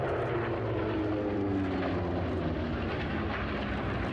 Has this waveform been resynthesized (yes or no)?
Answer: no